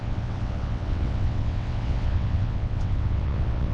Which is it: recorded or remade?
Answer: remade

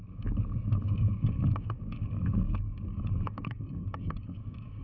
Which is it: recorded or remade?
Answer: remade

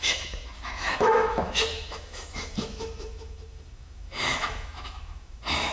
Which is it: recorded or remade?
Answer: remade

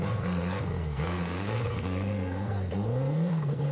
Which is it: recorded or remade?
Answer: remade